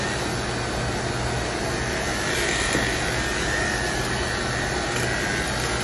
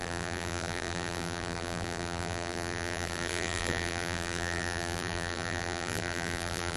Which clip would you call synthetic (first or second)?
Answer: second